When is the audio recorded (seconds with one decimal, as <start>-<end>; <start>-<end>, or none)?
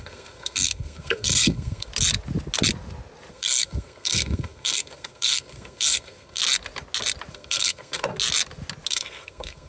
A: 1.9-3.3; 6.4-7.3; 8.1-8.9